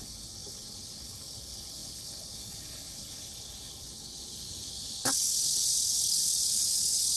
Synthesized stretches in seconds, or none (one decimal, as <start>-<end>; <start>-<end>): 0.0-7.2